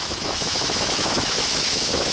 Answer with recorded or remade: remade